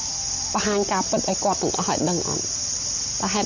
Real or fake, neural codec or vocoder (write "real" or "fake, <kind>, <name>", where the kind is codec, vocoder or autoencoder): real